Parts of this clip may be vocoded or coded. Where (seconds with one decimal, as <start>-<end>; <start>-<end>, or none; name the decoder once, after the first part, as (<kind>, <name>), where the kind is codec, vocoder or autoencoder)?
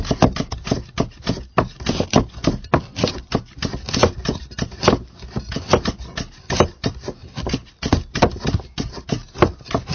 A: none